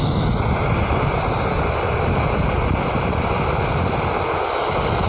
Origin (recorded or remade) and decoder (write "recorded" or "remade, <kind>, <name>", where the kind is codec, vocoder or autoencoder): recorded